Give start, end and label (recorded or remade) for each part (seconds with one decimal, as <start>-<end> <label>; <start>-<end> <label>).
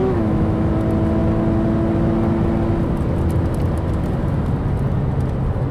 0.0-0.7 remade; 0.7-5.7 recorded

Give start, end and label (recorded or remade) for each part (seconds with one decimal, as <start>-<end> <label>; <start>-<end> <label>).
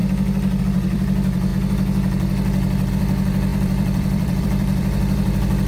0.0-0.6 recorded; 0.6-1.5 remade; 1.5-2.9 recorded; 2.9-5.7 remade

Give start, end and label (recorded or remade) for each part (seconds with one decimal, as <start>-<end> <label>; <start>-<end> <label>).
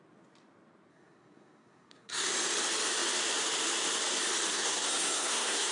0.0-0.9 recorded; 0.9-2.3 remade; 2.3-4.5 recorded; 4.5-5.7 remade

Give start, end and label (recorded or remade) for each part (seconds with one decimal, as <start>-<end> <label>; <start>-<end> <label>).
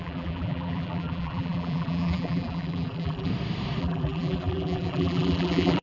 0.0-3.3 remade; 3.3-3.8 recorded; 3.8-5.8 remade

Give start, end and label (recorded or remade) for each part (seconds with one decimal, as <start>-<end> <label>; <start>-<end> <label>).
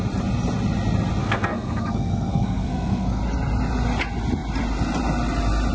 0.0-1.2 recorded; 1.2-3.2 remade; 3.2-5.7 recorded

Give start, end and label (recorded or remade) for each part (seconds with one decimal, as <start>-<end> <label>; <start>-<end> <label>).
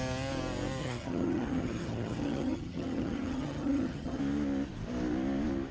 0.0-0.8 recorded; 0.8-4.2 remade; 4.2-5.7 recorded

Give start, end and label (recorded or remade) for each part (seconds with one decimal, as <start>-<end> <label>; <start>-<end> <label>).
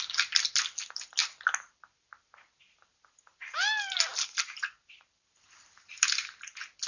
0.0-6.9 recorded